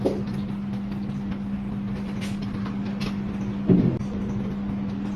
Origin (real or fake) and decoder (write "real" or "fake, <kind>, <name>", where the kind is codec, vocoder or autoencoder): real